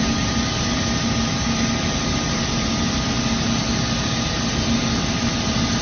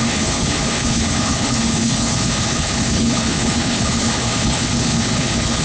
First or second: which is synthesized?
second